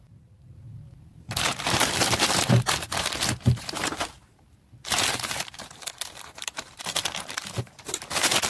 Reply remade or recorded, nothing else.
remade